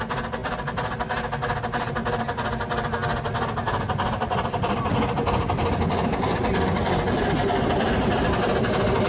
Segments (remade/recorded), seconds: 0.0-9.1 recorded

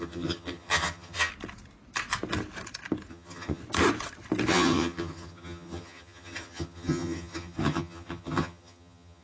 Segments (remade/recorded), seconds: 0.0-1.3 remade; 1.3-3.1 recorded; 3.1-3.6 remade; 3.6-4.5 recorded; 4.5-9.2 remade